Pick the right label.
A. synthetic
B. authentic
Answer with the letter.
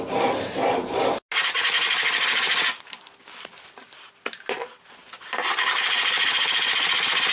B